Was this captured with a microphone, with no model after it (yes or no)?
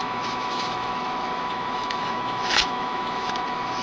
no